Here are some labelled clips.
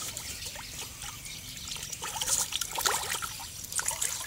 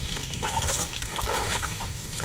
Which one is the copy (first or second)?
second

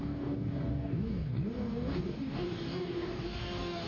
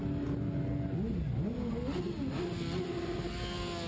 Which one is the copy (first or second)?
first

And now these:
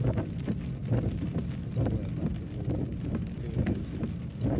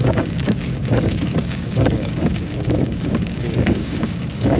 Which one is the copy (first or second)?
second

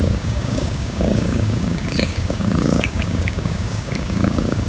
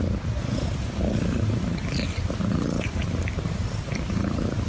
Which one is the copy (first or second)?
first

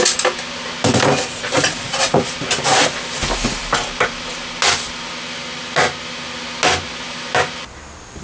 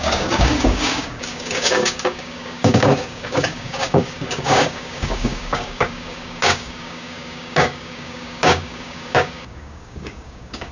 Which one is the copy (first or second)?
second